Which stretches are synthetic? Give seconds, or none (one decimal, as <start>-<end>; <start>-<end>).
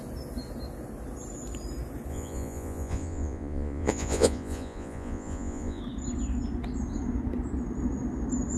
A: 2.1-5.8